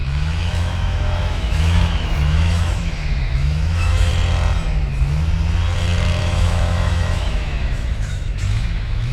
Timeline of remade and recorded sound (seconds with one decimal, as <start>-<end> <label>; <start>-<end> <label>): 0.0-4.1 remade; 4.1-6.2 recorded; 6.2-9.1 remade